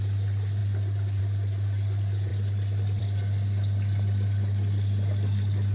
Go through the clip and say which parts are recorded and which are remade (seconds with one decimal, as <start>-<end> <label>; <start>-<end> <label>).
0.0-5.7 recorded